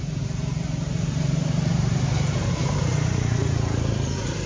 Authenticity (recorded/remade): remade